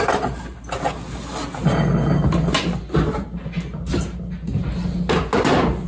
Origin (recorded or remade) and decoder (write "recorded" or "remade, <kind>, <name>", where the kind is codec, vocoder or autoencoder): recorded